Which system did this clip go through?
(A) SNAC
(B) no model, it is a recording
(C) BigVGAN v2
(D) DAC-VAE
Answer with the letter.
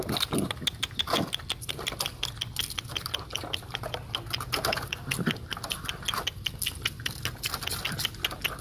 B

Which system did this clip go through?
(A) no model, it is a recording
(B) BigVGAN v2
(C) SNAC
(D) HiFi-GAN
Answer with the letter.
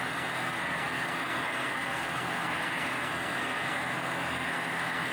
C